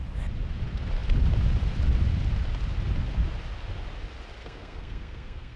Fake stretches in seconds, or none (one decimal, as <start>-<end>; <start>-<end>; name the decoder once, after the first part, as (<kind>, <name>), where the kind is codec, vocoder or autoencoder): 4.4-5.6 (codec, SNAC)